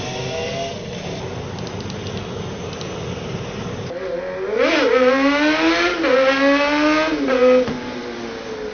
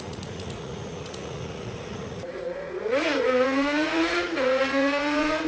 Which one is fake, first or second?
second